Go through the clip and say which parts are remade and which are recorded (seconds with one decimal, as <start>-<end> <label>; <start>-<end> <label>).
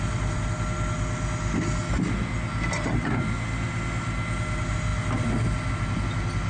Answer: 0.0-6.5 recorded